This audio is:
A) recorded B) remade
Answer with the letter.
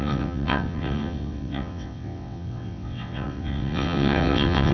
B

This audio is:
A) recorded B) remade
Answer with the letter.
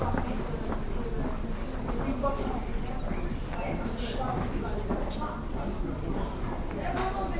A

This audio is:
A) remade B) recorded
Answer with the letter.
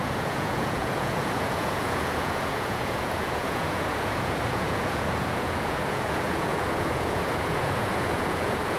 A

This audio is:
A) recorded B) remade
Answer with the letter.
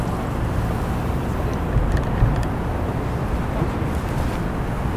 A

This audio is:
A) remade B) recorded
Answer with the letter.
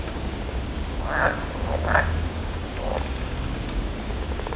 A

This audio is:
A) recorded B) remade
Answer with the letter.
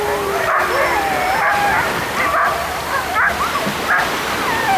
A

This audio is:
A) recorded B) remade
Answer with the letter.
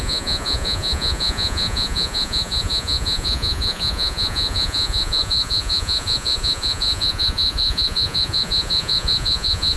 B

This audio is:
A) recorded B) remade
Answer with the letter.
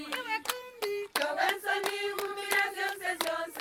B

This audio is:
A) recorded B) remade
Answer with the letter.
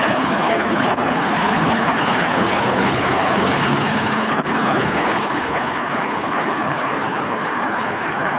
B